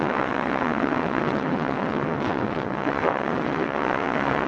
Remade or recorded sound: remade